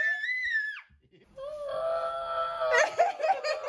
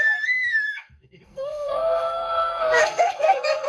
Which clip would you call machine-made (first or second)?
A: second